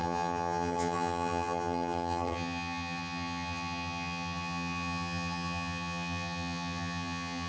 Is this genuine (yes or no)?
no